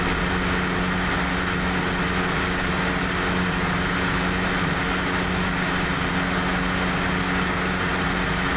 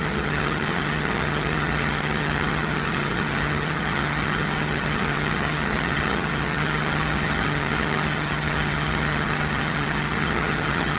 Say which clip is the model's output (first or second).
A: second